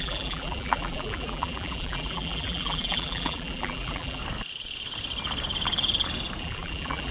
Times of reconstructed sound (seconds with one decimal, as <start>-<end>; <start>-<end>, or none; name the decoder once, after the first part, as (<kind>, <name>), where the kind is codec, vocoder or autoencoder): 0.0-4.2 (vocoder, BigVGAN v2); 6.4-7.1